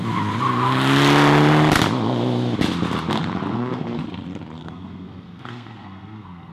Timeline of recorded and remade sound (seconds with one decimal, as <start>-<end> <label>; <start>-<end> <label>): 0.0-3.5 recorded; 3.5-4.0 remade; 4.0-4.6 recorded; 4.6-6.5 remade